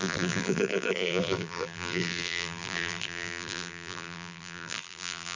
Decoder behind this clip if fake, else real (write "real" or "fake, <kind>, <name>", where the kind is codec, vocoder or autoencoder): fake, vocoder, BigVGAN v2